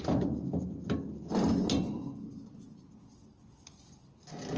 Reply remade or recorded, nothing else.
recorded